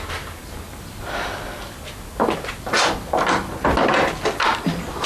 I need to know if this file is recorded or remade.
recorded